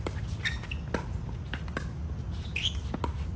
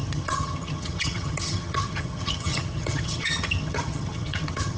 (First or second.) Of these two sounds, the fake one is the second